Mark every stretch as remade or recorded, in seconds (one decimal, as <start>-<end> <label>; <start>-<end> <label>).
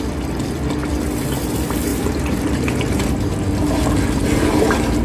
0.0-1.9 recorded; 1.9-3.1 remade; 3.1-5.0 recorded